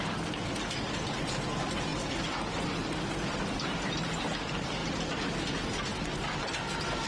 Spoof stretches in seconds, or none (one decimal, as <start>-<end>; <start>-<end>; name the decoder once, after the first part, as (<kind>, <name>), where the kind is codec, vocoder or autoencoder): none

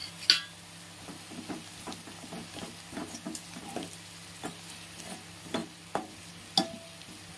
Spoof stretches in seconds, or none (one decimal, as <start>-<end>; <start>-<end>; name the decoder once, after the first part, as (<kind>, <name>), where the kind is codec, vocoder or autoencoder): none

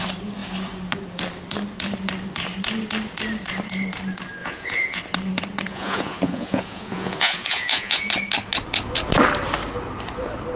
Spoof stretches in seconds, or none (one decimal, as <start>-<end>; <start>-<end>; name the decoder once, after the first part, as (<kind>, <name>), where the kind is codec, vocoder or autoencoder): 4.4-5.0 (vocoder, Vocos); 5.7-8.1